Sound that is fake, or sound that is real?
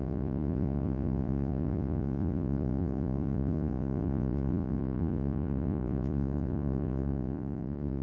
fake